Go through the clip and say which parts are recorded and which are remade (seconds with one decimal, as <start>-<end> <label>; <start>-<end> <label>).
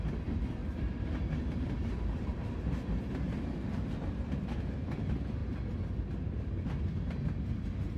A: 0.0-0.6 remade; 0.6-1.4 recorded; 1.4-5.4 remade; 5.4-7.6 recorded; 7.6-8.0 remade